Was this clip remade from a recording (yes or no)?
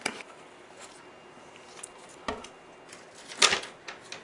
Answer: no